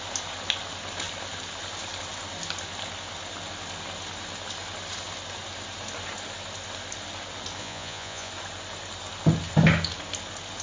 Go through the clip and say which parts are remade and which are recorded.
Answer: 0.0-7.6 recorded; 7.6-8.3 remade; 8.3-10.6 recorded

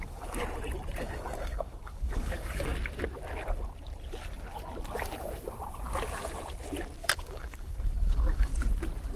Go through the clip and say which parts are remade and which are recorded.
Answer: 0.0-0.4 remade; 0.4-1.0 recorded; 1.0-2.7 remade; 2.7-7.0 recorded; 7.0-8.5 remade; 8.5-9.2 recorded

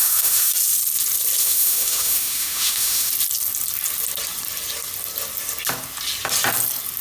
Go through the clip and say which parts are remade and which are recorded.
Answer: 0.0-0.5 remade; 0.5-1.4 recorded; 1.4-3.1 remade; 3.1-7.0 recorded

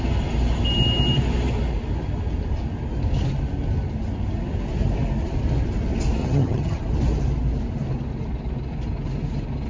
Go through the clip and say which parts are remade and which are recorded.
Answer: 0.0-6.2 recorded; 6.2-6.8 remade; 6.8-9.7 recorded

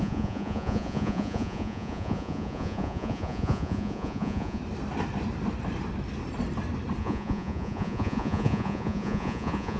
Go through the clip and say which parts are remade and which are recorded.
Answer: 0.0-4.6 remade; 4.6-7.0 recorded; 7.0-9.8 remade

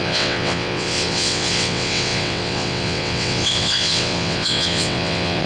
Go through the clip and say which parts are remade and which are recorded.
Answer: 0.0-5.5 remade

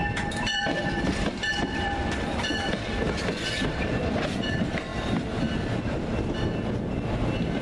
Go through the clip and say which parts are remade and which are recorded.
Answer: 0.0-4.2 remade; 4.2-7.6 recorded

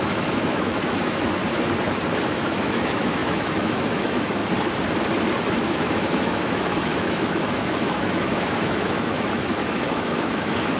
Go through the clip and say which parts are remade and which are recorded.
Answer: 0.0-1.4 remade; 1.4-2.2 recorded; 2.2-4.4 remade; 4.4-5.5 recorded; 5.5-10.8 remade